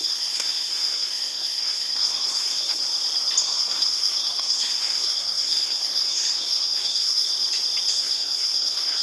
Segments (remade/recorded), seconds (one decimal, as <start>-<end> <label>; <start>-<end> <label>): 0.0-2.8 remade; 2.8-3.4 recorded; 3.4-7.3 remade; 7.3-7.9 recorded; 7.9-9.0 remade